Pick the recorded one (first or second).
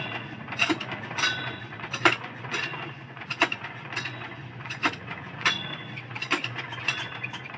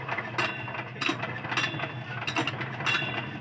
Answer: second